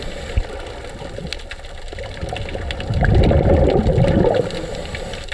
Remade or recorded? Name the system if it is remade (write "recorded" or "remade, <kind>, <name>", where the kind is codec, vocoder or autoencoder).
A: recorded